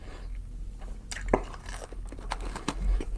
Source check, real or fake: real